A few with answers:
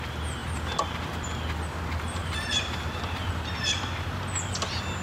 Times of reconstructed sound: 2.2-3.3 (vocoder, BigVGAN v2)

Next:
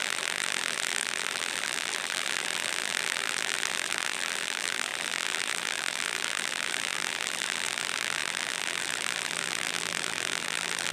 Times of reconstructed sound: 0.0-10.9 (vocoder, BigVGAN v2)

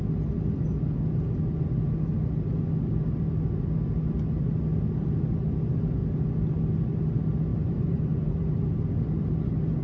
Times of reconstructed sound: 7.5-8.4 (vocoder, BigVGAN v2)